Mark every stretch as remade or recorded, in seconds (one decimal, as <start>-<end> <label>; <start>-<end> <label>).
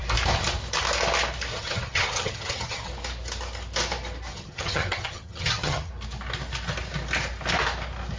0.0-1.5 recorded; 1.5-2.9 remade; 2.9-4.3 recorded; 4.3-5.9 remade; 5.9-8.2 recorded